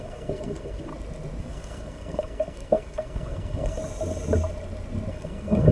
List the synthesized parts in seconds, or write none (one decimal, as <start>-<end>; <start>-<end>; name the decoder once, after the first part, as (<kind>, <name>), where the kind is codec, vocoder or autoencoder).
0.0-0.9 (codec, SNAC); 1.4-3.8; 5.1-5.7

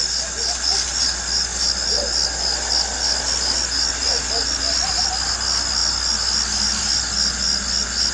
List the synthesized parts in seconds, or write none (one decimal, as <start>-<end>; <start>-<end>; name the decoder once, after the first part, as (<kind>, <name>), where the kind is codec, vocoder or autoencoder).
none

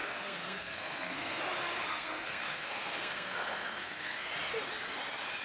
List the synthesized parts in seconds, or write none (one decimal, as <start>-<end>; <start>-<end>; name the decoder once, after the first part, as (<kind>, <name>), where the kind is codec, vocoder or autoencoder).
0.0-1.4 (codec, SNAC); 1.9-4.3

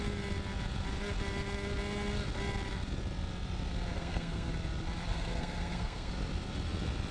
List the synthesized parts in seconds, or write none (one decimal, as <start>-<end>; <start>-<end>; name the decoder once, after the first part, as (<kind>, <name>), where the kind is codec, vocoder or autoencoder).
3.9-4.5 (codec, SNAC); 5.1-6.1

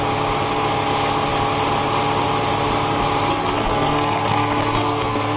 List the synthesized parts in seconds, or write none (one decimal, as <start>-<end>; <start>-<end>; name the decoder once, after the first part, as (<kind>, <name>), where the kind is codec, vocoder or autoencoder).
3.3-5.4 (codec, SNAC)

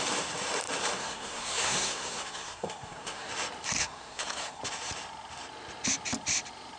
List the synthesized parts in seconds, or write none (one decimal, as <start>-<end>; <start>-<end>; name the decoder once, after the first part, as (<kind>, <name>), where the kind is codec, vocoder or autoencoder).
1.0-3.3 (codec, SNAC); 3.8-4.6